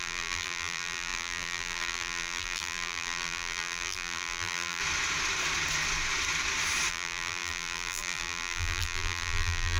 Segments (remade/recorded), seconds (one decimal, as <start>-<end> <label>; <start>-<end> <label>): 0.0-4.8 remade; 4.8-6.9 recorded; 6.9-9.8 remade